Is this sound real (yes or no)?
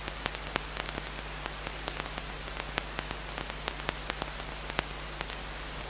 yes